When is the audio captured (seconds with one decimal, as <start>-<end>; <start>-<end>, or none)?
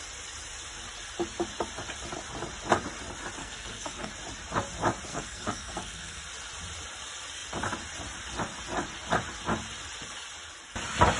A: 0.0-3.4; 4.1-5.1; 6.2-11.2